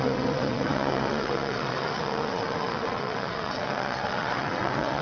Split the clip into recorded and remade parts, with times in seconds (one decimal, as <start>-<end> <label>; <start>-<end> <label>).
0.0-5.0 remade